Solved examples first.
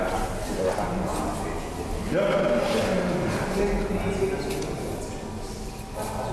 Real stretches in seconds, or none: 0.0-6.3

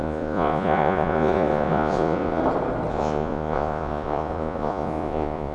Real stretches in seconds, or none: 2.4-2.9

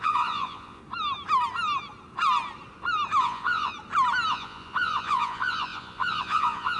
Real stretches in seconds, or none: 0.8-3.2; 3.7-4.3

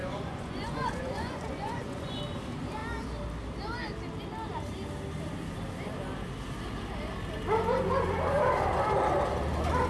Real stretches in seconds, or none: 2.2-9.9